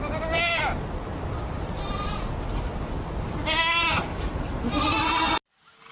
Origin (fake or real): real